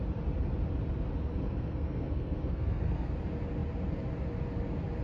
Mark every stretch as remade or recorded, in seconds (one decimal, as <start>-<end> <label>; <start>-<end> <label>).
0.0-1.3 recorded; 1.3-3.1 remade; 3.1-5.0 recorded